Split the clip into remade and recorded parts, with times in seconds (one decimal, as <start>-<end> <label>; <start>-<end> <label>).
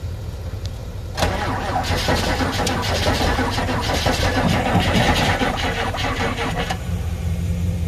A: 0.0-0.8 remade; 0.8-5.5 recorded; 5.5-7.9 remade